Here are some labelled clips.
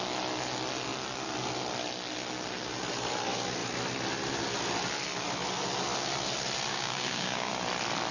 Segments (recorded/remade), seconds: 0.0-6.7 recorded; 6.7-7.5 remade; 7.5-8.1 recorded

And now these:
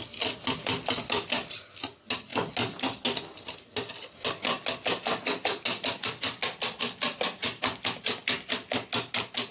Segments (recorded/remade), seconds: 0.0-9.5 recorded

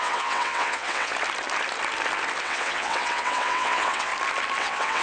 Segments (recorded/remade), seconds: 0.0-1.1 remade; 1.1-2.4 recorded; 2.4-4.1 remade; 4.1-4.6 recorded; 4.6-5.0 remade

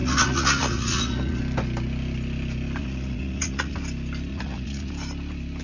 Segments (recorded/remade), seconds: 0.0-1.4 remade; 1.4-2.8 recorded; 2.8-3.8 remade; 3.8-4.3 recorded; 4.3-4.9 remade; 4.9-5.6 recorded

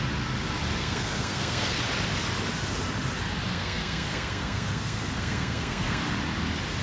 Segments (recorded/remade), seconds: 0.0-0.8 recorded; 0.8-1.8 remade; 1.8-3.5 recorded; 3.5-6.0 remade; 6.0-6.8 recorded

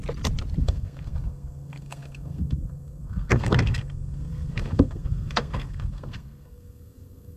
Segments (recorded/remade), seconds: 0.0-0.6 recorded; 0.6-7.4 remade

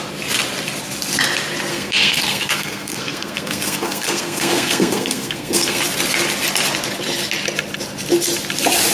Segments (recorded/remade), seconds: 0.0-1.7 recorded; 1.7-5.8 remade; 5.8-8.9 recorded